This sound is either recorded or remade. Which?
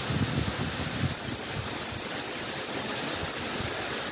recorded